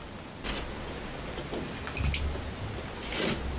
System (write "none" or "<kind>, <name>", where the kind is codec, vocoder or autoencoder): none